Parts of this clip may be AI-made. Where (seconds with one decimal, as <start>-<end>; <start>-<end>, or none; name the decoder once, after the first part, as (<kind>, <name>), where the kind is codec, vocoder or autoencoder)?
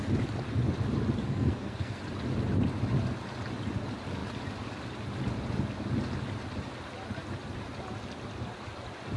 1.2-2.0 (codec, SNAC)